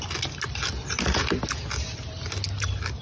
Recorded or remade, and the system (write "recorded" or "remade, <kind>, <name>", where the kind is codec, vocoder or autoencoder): recorded